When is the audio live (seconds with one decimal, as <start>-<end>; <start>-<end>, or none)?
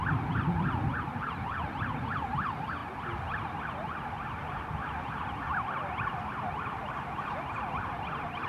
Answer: 0.0-1.2; 2.8-7.7